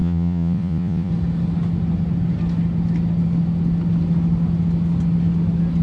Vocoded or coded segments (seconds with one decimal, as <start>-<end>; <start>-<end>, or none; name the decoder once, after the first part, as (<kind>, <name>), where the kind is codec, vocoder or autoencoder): 0.0-1.1 (vocoder, Vocos)